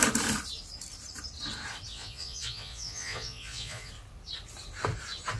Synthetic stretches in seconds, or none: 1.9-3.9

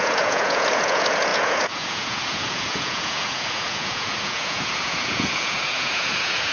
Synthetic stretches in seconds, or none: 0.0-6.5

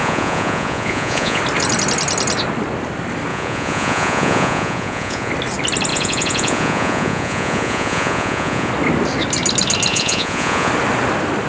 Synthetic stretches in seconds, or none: 0.0-1.4; 3.3-5.3; 5.9-8.7; 9.9-10.7

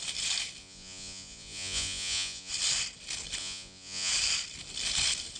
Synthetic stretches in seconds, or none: 0.6-2.5; 3.4-4.1

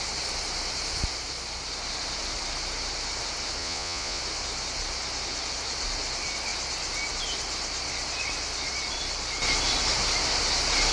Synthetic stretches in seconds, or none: 3.6-4.2

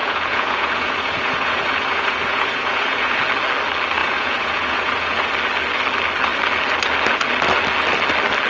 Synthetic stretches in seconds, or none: 0.0-3.2; 4.0-5.3